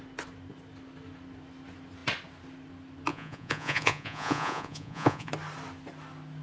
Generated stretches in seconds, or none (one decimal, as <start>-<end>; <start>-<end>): 3.1-5.3

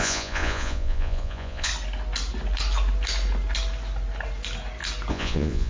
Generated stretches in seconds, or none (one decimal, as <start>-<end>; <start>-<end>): 0.0-1.7; 5.1-5.7